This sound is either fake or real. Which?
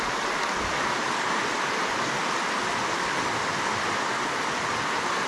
real